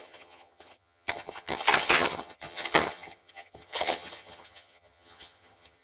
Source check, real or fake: fake